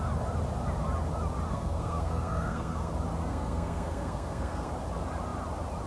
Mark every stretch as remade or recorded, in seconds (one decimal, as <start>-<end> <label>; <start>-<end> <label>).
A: 0.0-1.5 recorded; 1.5-2.9 remade; 2.9-3.3 recorded; 3.3-4.7 remade; 4.7-5.9 recorded